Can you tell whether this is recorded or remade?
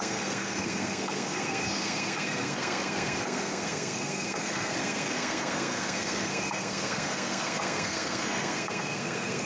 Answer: remade